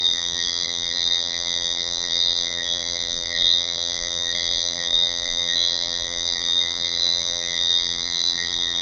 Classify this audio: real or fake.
fake